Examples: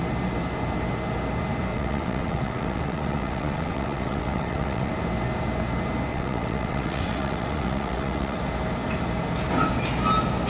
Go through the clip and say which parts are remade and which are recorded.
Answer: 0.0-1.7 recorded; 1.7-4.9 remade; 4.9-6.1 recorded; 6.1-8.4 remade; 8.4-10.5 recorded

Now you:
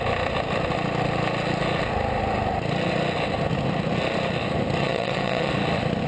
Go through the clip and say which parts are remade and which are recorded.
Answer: 0.0-4.8 recorded; 4.8-5.5 remade; 5.5-6.1 recorded

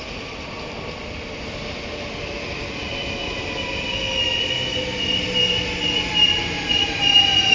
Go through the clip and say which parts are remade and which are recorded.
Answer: 0.0-7.5 recorded

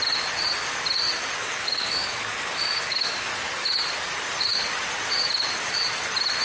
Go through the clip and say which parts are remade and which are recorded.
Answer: 0.0-1.4 recorded; 1.4-3.3 remade; 3.3-6.4 recorded

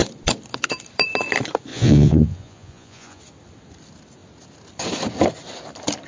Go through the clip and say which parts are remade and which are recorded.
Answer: 0.0-1.7 recorded; 1.7-3.2 remade; 3.2-6.1 recorded

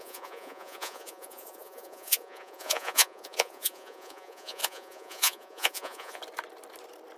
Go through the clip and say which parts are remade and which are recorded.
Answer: 0.0-6.2 remade; 6.2-7.2 recorded

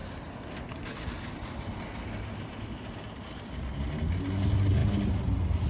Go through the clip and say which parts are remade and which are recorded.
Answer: 0.0-5.7 recorded